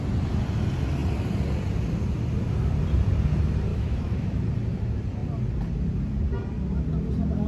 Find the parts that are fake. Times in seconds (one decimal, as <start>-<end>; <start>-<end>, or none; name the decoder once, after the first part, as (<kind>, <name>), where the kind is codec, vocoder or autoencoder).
3.7-4.4 (autoencoder, DAC-VAE)